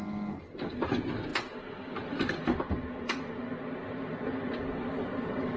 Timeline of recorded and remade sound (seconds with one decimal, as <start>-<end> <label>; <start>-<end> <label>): 0.0-5.6 recorded